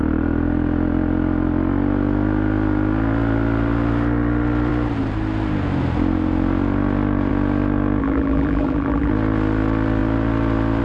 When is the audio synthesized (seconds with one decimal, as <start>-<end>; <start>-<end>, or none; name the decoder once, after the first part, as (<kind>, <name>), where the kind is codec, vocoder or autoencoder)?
8.0-9.1 (vocoder, BigVGAN v2)